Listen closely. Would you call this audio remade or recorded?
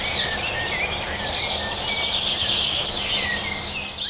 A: recorded